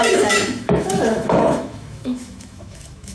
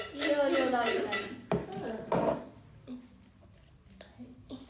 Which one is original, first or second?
second